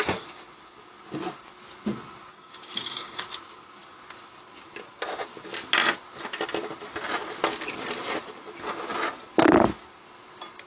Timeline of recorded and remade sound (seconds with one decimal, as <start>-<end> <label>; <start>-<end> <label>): 0.0-2.3 recorded; 2.3-3.2 remade; 3.2-10.7 recorded